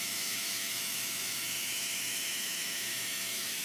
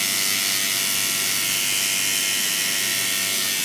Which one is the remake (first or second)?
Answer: first